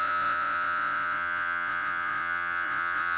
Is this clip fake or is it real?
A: fake